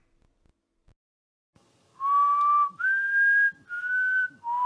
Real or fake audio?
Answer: real